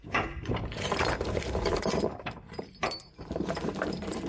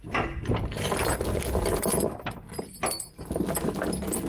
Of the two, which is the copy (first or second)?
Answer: first